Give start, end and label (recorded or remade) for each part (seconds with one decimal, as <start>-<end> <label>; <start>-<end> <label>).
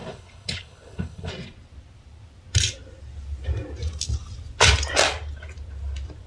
0.0-1.3 remade; 1.3-6.3 recorded